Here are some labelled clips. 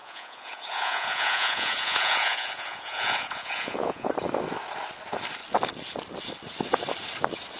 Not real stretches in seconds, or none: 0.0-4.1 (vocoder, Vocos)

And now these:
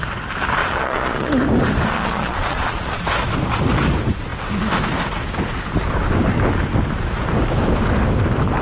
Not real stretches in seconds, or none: 0.6-1.3 (vocoder, Vocos); 1.9-3.0

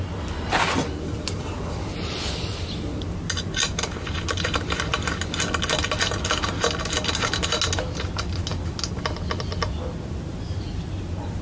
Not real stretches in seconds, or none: none

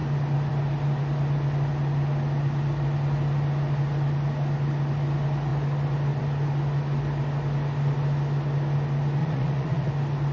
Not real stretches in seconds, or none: 9.2-9.9 (vocoder, Vocos)

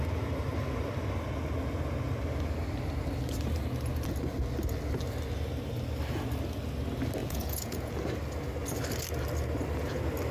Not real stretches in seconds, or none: 7.2-7.9 (vocoder, Vocos)

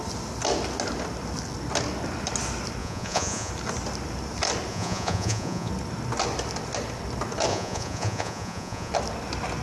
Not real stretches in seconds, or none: 2.8-3.5 (vocoder, Vocos); 4.7-5.7; 7.5-8.9

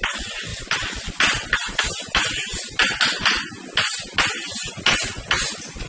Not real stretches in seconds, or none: none